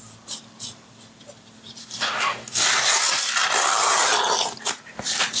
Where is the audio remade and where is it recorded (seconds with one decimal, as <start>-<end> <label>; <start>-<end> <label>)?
0.0-1.8 recorded; 1.8-2.7 remade; 2.7-5.4 recorded